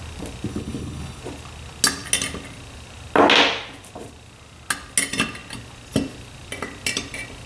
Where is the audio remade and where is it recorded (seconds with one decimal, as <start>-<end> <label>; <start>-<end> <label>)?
0.0-0.5 recorded; 0.5-1.2 remade; 1.2-7.5 recorded